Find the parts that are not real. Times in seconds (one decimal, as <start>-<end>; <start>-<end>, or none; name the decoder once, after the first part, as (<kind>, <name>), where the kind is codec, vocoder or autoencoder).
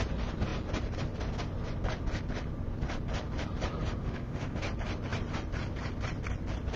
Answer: 4.0-4.6 (autoencoder, DAC-VAE)